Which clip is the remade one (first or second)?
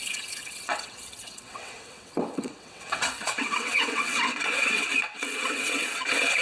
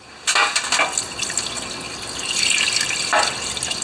first